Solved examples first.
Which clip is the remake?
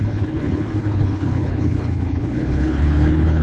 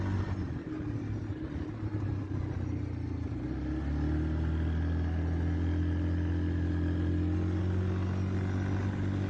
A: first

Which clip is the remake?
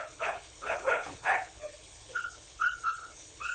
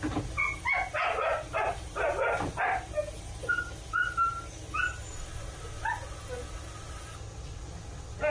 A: first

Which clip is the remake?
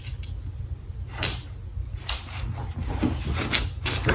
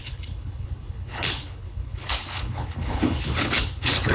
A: second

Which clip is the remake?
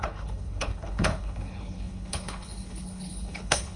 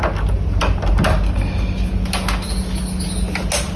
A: first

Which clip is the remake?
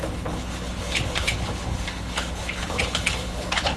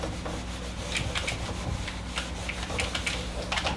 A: first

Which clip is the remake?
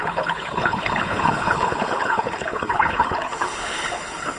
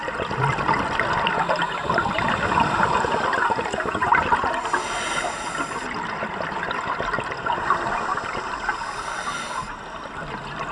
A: first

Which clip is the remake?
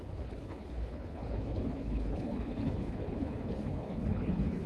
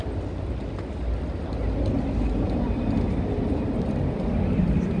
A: first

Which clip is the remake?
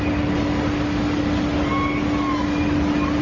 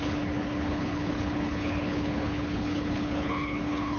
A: second